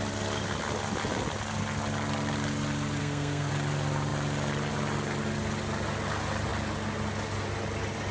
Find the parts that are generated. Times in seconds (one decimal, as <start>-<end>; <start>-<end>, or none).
3.0-3.5